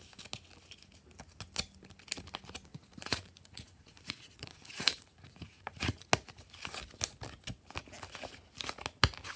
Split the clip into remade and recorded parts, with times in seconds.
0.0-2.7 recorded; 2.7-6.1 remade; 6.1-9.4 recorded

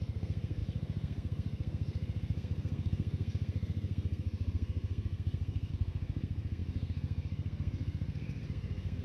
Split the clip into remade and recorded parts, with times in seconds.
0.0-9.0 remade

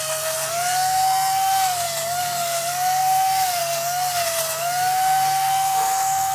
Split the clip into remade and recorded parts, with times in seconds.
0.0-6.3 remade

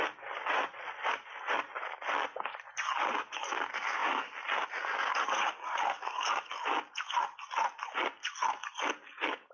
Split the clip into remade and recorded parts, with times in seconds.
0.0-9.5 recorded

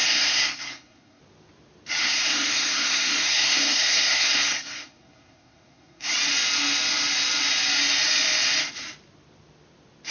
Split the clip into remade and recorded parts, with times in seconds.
0.0-1.2 remade; 1.2-2.0 recorded; 2.0-6.1 remade; 6.1-10.1 recorded

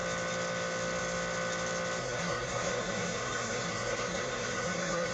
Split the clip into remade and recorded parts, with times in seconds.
0.0-2.0 recorded; 2.0-5.1 remade

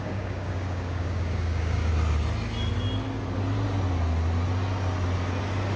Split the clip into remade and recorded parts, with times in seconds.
0.0-1.9 remade; 1.9-5.8 recorded

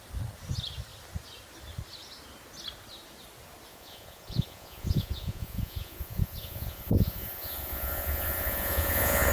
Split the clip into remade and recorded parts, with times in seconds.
0.0-3.7 recorded; 3.7-9.3 remade